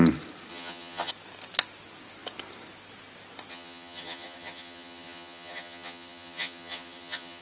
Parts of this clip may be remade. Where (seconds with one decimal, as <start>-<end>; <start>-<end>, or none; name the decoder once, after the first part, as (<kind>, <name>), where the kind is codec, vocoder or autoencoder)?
0.5-1.1 (vocoder, HiFi-GAN); 3.5-7.4